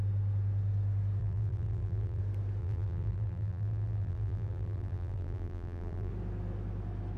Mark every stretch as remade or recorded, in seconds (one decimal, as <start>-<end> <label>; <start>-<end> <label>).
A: 0.0-1.2 recorded; 1.2-2.2 remade; 2.2-2.6 recorded; 2.6-6.1 remade; 6.1-7.2 recorded